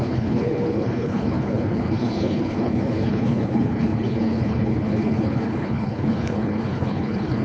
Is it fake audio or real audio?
fake